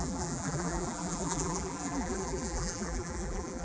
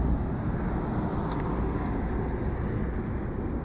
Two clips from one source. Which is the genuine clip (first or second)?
second